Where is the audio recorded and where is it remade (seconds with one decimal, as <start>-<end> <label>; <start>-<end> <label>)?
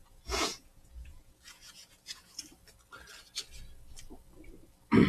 0.0-2.4 remade; 2.4-5.1 recorded